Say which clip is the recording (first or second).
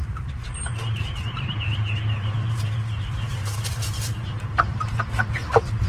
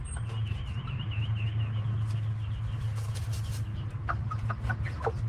second